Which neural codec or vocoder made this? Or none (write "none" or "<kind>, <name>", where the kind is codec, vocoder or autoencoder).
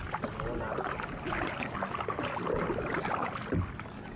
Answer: none